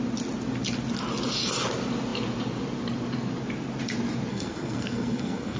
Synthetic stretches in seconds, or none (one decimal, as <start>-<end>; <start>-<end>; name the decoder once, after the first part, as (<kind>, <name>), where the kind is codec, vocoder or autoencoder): 4.3-5.6 (codec, SNAC)